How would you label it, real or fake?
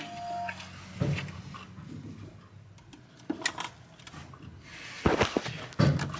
real